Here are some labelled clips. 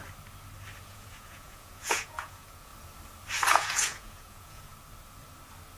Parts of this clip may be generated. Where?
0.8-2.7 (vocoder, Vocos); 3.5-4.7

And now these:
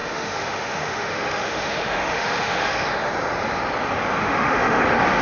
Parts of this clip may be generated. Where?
0.0-3.1 (autoencoder, DAC-VAE); 4.2-4.8